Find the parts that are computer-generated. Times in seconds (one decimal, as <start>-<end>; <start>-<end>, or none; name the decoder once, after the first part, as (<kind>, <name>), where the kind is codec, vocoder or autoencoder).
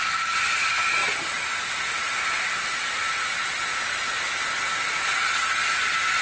1.0-3.8 (vocoder, BigVGAN v2)